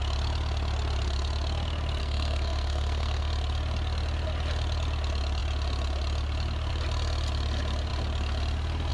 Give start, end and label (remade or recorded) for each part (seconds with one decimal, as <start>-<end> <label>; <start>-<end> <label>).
0.0-2.0 recorded; 2.0-3.3 remade; 3.3-8.9 recorded